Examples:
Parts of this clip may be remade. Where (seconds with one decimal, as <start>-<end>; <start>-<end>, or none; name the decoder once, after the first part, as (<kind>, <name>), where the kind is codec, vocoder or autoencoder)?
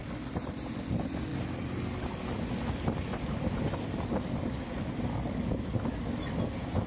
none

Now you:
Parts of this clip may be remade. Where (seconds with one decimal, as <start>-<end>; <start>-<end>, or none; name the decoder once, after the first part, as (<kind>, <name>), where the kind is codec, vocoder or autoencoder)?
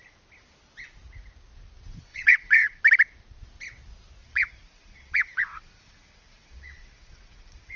2.1-2.8 (vocoder, WaveNeXt); 4.2-7.8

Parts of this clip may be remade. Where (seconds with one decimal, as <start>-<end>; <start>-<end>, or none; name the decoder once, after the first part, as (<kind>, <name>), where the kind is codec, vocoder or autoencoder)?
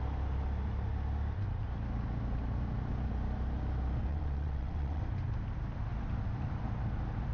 4.1-5.0 (vocoder, WaveNeXt)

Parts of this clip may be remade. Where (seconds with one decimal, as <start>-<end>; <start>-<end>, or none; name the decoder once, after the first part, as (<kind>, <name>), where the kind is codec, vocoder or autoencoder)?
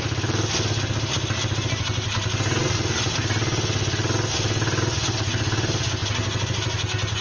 none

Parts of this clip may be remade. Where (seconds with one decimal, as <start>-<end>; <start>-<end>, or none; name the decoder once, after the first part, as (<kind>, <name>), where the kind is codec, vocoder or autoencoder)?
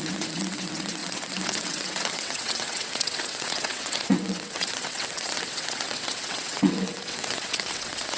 0.0-8.2 (vocoder, WaveNeXt)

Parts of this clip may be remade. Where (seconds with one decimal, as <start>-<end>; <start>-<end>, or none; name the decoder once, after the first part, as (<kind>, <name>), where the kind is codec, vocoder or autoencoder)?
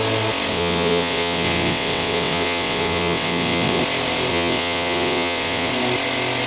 0.5-3.8 (vocoder, WaveNeXt); 4.3-5.7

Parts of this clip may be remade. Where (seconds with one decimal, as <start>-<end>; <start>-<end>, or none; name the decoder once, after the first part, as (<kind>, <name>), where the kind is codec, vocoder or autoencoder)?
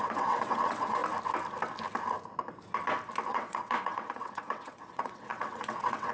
0.0-1.0 (vocoder, WaveNeXt); 3.3-6.1